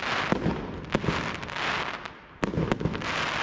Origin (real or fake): real